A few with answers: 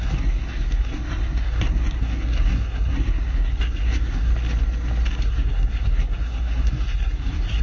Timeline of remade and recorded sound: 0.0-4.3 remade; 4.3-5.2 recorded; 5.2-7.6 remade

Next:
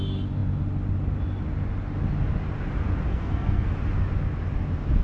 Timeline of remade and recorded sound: 0.0-3.1 recorded; 3.1-3.7 remade; 3.7-5.0 recorded

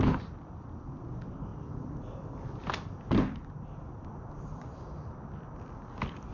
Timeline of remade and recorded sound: 0.0-6.3 recorded

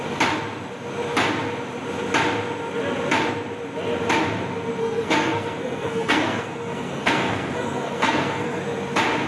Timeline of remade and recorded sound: 0.0-4.8 recorded; 4.8-8.6 remade; 8.6-9.3 recorded